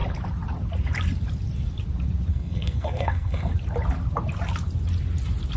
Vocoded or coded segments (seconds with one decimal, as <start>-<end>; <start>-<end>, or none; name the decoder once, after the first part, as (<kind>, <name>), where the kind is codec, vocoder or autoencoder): 2.3-3.5 (codec, SNAC)